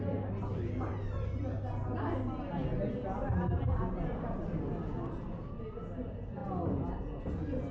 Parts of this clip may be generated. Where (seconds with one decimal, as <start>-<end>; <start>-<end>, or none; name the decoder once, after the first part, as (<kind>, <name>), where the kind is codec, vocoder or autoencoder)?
none